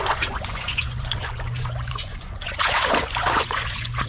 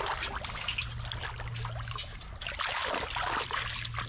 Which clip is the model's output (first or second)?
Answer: first